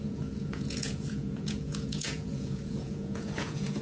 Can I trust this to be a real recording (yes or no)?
no